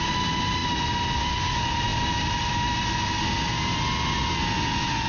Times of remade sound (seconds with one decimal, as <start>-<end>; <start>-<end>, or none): none